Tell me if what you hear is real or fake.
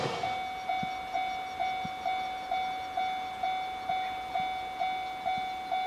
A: real